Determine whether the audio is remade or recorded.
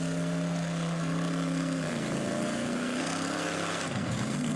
remade